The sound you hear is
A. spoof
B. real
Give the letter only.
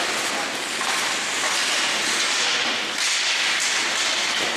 B